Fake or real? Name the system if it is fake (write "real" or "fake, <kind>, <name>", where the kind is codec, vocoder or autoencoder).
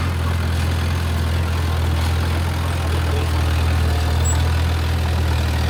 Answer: real